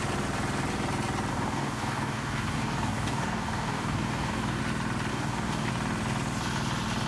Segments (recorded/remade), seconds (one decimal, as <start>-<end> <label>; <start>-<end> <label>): 0.0-1.3 recorded; 1.3-4.6 remade; 4.6-5.1 recorded; 5.1-5.7 remade; 5.7-7.1 recorded

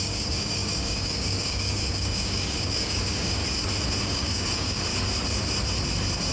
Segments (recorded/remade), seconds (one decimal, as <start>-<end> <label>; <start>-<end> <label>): 0.0-3.4 remade; 3.4-4.0 recorded; 4.0-4.9 remade; 4.9-6.3 recorded

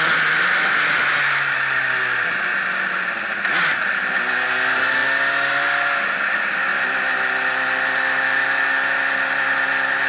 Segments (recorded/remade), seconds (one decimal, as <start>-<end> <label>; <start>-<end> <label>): 0.0-10.1 recorded

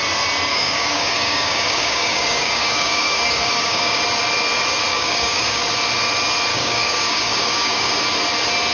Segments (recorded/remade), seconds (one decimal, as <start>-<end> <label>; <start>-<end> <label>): 0.0-0.5 recorded; 0.5-4.0 remade; 4.0-4.9 recorded; 4.9-5.6 remade; 5.6-6.5 recorded; 6.5-7.9 remade; 7.9-8.7 recorded

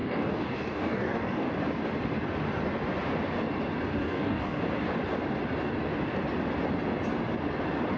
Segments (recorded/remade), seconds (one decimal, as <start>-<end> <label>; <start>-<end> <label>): 0.0-1.5 remade; 1.5-3.9 recorded; 3.9-4.6 remade; 4.6-8.0 recorded

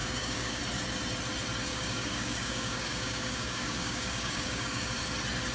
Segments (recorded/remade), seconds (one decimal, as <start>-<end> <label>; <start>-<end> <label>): 0.0-0.6 remade; 0.6-1.7 recorded; 1.7-5.0 remade; 5.0-5.5 recorded

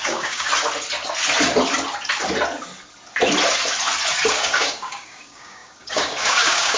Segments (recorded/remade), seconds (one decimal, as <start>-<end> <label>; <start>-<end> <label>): 0.0-0.5 remade; 0.5-4.3 recorded; 4.3-6.8 remade

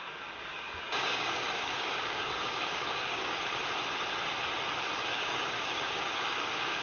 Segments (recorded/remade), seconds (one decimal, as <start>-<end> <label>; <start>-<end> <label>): 0.0-3.4 remade; 3.4-5.1 recorded; 5.1-6.8 remade